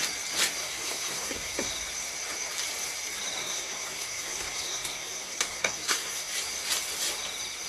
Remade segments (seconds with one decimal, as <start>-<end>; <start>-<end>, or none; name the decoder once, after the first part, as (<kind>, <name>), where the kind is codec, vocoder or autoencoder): 0.6-1.7 (codec, SNAC); 3.4-6.3